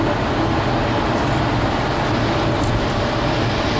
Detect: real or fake real